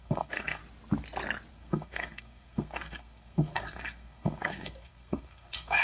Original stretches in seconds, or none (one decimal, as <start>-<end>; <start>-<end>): 0.6-1.5